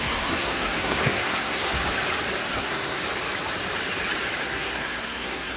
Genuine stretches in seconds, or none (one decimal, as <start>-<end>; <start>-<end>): 1.8-2.5; 3.0-4.4